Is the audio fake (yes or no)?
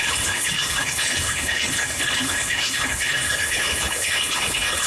yes